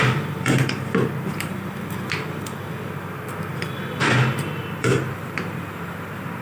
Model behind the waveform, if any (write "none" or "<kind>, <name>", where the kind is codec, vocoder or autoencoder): vocoder, BigVGAN v2